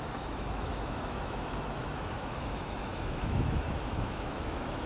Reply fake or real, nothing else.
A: fake